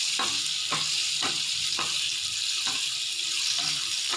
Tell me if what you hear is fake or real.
real